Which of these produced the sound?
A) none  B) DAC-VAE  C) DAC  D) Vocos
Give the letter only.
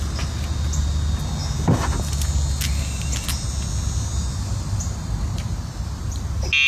A